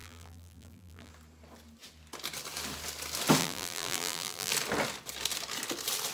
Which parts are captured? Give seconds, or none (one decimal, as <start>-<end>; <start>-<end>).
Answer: 1.1-3.4; 4.5-6.1